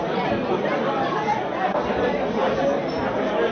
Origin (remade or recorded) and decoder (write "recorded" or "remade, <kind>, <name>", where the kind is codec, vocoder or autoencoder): recorded